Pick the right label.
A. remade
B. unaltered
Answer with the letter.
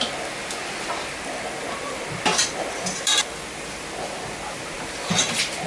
B